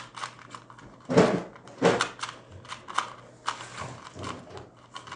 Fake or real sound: real